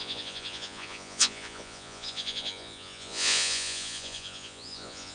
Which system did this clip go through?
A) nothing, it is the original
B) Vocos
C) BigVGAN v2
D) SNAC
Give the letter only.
B